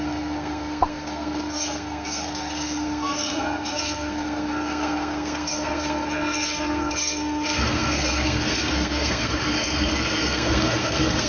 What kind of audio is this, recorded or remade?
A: remade